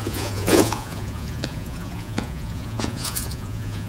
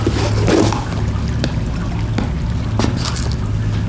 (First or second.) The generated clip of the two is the first